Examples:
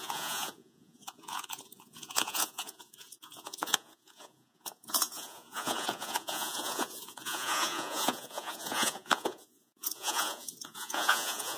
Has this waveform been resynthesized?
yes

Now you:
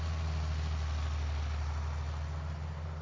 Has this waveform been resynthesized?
no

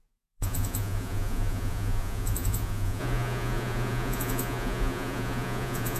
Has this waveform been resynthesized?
yes